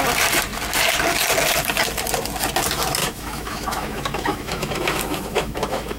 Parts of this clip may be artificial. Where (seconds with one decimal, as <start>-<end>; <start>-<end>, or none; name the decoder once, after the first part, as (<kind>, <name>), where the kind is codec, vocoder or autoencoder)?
3.0-6.0 (autoencoder, DAC-VAE)